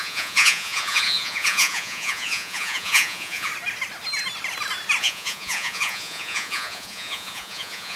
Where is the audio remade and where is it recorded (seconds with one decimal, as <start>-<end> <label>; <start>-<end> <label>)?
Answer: 0.0-3.5 remade; 3.5-5.0 recorded; 5.0-8.0 remade